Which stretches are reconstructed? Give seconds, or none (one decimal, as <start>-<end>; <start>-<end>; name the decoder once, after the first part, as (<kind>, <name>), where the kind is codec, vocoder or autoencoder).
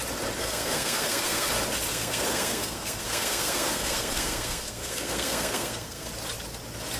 0.4-1.5 (codec, SNAC); 1.9-6.1